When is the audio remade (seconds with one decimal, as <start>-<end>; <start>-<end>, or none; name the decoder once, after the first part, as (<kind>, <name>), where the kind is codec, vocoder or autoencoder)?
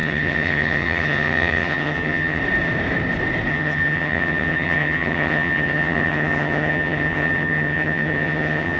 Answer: 0.0-2.4 (vocoder, HiFi-GAN); 3.5-8.8